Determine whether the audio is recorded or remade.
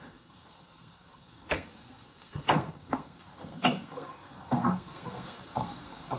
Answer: remade